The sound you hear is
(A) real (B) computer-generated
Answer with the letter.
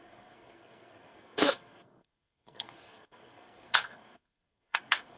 B